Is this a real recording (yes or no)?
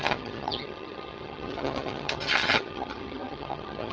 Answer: no